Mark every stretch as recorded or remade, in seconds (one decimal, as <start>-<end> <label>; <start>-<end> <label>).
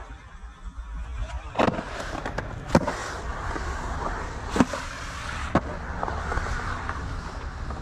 0.0-7.8 recorded